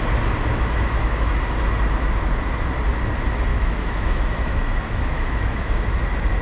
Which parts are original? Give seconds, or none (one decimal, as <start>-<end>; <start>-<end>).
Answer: 0.0-0.5; 1.4-3.5; 6.0-6.4